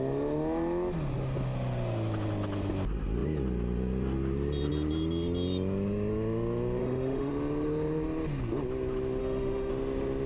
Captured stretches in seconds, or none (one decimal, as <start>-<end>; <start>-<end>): 0.0-6.8; 7.3-9.2; 9.7-10.3